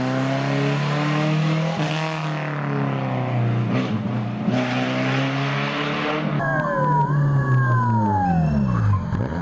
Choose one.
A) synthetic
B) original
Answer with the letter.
B